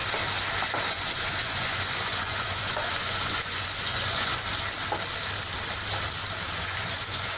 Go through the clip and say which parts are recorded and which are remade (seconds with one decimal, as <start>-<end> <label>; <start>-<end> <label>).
0.0-0.9 recorded; 0.9-4.3 remade; 4.3-6.6 recorded; 6.6-7.4 remade